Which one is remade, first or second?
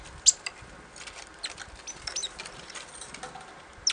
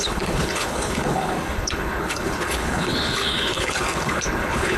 second